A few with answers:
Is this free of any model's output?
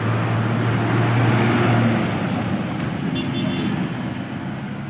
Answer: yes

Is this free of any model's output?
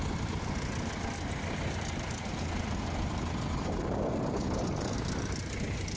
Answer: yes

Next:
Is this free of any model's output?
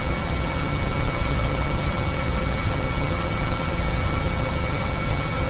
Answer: no